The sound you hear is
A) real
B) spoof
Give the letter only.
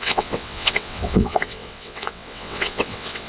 B